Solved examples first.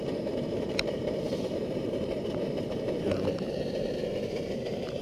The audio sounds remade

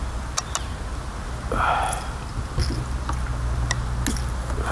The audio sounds recorded